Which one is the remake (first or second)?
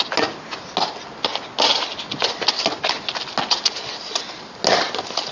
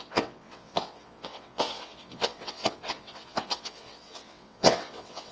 second